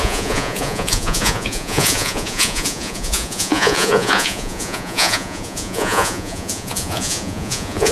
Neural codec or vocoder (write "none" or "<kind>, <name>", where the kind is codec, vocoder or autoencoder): vocoder, Vocos